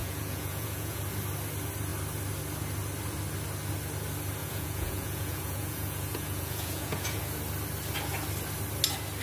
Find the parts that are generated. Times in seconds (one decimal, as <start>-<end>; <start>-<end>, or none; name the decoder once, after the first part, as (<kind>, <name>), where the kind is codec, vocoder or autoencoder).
0.0-1.0 (vocoder, Vocos); 4.4-7.2